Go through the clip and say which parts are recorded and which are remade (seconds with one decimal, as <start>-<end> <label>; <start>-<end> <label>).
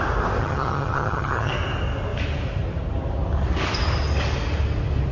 0.0-0.4 recorded; 0.4-1.5 remade; 1.5-5.1 recorded